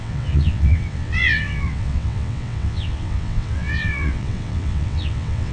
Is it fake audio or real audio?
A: fake